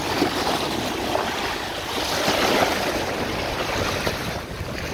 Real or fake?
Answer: real